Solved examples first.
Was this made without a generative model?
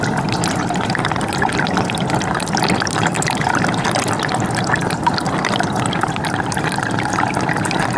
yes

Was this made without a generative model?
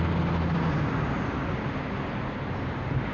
yes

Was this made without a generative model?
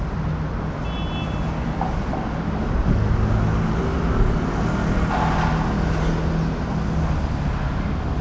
yes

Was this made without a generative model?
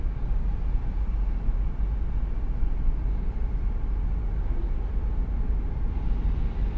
no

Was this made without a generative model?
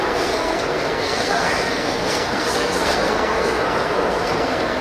no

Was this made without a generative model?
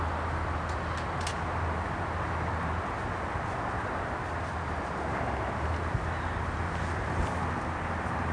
yes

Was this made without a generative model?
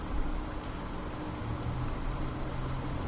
yes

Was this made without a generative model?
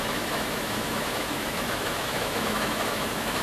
no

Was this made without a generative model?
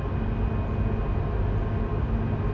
yes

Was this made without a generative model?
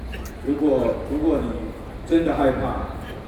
yes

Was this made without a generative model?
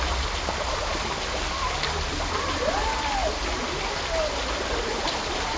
yes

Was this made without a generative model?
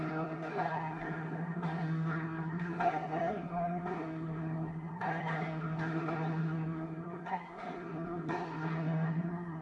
no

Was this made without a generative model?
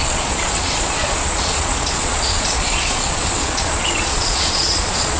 no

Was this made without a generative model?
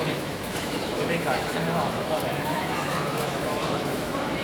no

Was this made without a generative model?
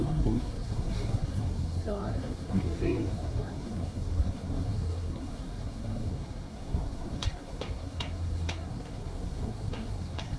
no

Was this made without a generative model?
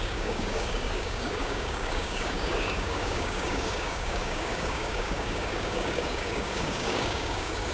no